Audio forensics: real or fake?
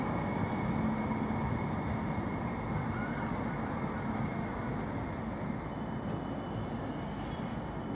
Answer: real